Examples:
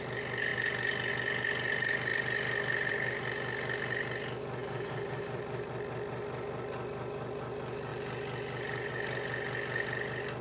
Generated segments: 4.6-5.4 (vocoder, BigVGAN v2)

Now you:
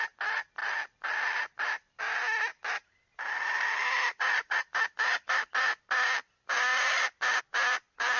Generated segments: 0.6-2.0 (vocoder, BigVGAN v2); 2.5-5.8; 6.7-7.4